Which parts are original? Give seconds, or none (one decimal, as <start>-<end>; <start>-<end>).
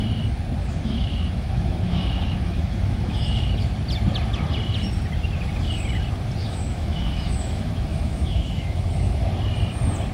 0.0-0.6; 3.7-6.4; 9.3-10.1